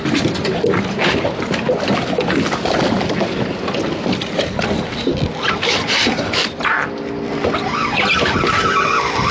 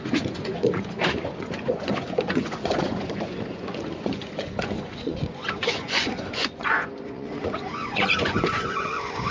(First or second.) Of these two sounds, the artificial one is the second